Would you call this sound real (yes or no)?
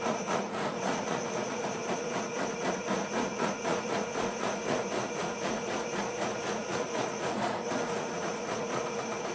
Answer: no